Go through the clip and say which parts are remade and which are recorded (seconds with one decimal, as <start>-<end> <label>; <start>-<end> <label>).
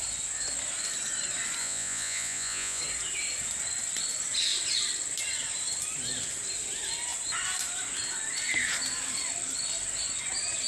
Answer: 0.0-1.6 recorded; 1.6-2.8 remade; 2.8-10.7 recorded